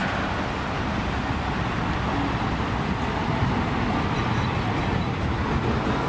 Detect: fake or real fake